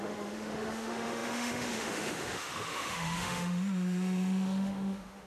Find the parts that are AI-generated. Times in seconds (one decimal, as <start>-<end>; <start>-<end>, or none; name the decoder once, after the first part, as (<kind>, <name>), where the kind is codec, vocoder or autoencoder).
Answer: 0.0-5.3 (autoencoder, DAC-VAE)